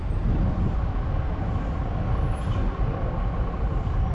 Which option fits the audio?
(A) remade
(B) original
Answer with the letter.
B